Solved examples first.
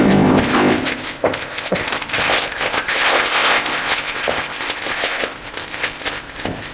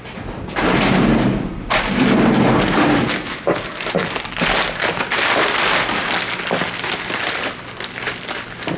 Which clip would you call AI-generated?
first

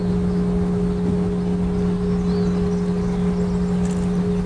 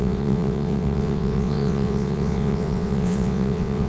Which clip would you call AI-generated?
second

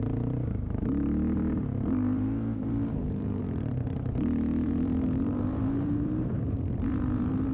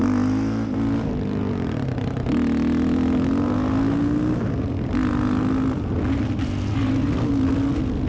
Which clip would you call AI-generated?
first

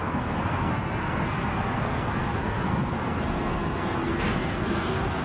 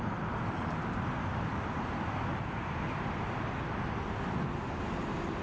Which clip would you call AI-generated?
first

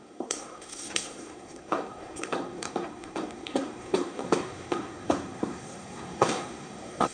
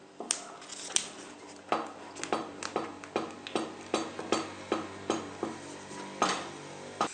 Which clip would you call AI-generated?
first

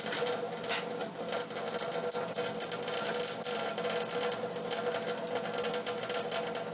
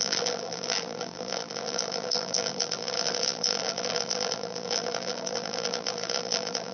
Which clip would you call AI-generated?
second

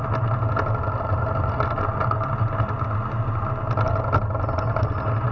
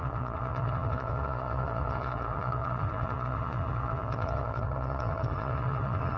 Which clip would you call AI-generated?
second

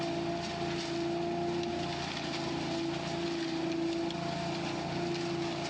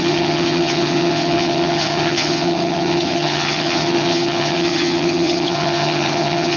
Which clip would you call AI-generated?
second